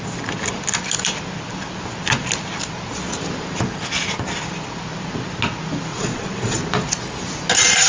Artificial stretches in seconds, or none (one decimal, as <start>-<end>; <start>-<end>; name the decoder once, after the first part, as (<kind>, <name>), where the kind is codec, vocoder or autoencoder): 5.9-6.6 (vocoder, Vocos)